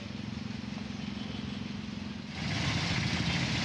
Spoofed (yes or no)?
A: no